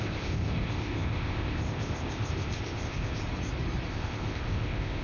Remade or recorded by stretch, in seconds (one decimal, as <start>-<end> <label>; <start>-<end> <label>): 0.0-3.2 remade; 3.2-3.9 recorded; 3.9-5.0 remade